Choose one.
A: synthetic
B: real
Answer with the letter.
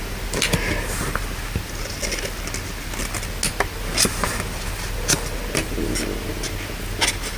B